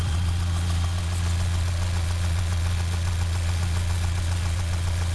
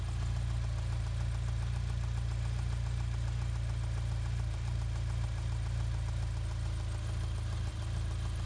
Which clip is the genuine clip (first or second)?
second